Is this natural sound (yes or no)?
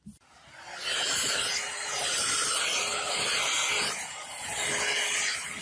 yes